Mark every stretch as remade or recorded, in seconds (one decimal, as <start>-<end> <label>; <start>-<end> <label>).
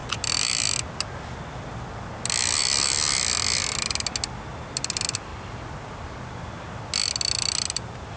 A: 0.0-8.2 recorded